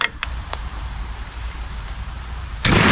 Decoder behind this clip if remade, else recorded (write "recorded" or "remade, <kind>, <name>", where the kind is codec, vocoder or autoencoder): remade, vocoder, BigVGAN v2